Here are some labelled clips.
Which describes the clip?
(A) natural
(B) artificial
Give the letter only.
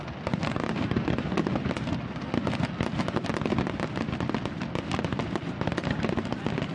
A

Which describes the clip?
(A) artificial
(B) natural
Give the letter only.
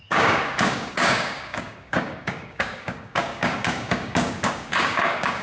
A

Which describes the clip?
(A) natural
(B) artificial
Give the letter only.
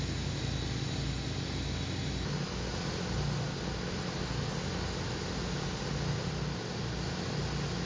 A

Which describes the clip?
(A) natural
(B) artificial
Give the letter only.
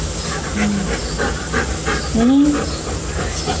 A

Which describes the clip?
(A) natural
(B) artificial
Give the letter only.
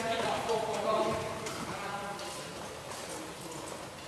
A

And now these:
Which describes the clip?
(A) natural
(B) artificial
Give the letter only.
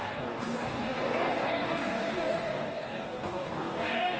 B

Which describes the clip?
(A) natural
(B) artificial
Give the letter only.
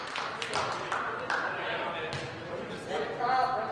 A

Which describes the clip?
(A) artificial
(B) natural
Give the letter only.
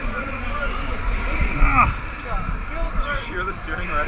B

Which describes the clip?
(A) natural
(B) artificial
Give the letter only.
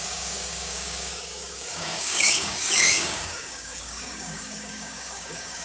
B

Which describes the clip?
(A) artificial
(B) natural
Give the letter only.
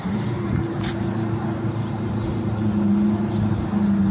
B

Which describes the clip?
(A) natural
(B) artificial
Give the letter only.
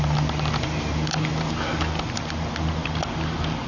A